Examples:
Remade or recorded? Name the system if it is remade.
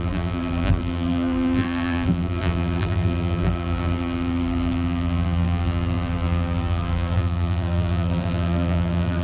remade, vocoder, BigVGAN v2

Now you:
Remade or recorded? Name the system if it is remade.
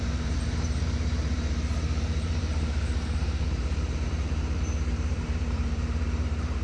remade, vocoder, BigVGAN v2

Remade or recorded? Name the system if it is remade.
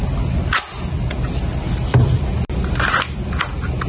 recorded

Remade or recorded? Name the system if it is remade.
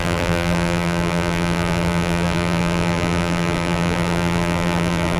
remade, vocoder, BigVGAN v2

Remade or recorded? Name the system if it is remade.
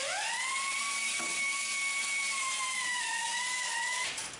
remade, vocoder, BigVGAN v2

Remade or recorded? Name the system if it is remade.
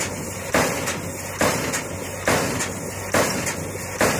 recorded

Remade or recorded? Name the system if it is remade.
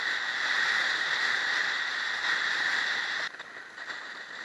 recorded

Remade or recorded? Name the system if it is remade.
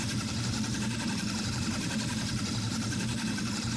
remade, vocoder, BigVGAN v2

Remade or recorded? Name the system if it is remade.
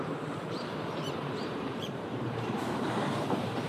remade, vocoder, BigVGAN v2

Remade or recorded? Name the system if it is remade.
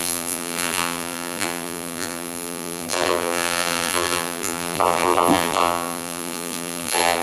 remade, vocoder, BigVGAN v2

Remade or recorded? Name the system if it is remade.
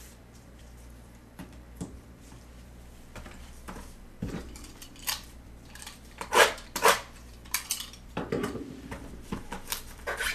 remade, vocoder, BigVGAN v2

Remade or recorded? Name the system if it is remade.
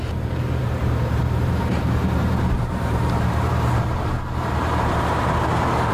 remade, vocoder, BigVGAN v2